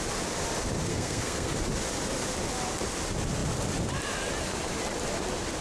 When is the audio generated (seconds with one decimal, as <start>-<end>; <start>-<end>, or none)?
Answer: 0.9-1.5